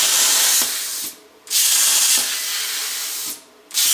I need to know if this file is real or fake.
fake